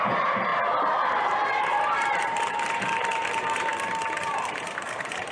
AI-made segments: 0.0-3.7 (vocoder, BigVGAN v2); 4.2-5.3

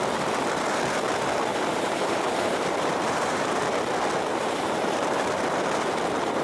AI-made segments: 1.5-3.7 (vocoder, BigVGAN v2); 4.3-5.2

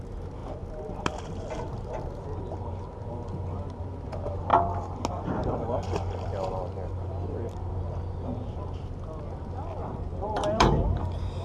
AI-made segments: 9.8-11.4 (vocoder, BigVGAN v2)

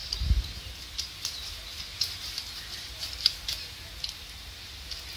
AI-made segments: 0.0-0.7 (vocoder, BigVGAN v2)

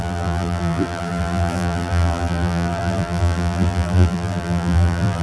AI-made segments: 0.0-5.2 (vocoder, BigVGAN v2)

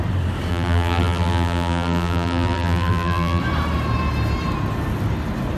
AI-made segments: 0.5-3.4 (vocoder, BigVGAN v2)